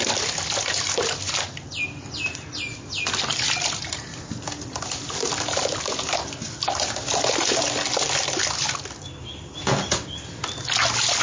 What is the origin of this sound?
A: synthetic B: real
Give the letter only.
B